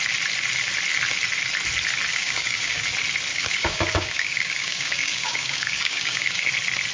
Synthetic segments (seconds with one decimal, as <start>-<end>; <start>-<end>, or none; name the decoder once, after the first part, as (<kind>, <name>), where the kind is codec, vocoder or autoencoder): 2.1-2.8 (codec, DAC); 3.3-6.5